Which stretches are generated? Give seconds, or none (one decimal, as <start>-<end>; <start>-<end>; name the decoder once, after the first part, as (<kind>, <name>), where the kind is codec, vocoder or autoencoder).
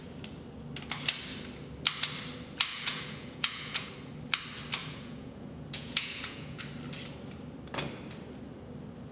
2.7-3.9 (vocoder, Vocos); 4.8-6.6